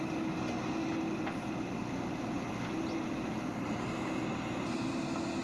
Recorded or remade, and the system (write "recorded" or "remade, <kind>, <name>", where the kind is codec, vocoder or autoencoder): recorded